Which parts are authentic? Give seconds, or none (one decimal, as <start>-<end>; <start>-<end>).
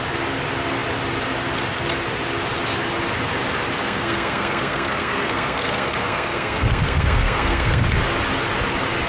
0.0-3.8; 7.8-9.1